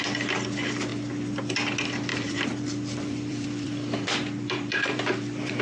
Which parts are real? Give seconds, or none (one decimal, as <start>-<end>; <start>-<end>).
0.0-2.1